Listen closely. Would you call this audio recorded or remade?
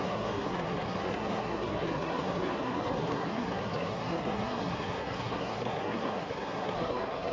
remade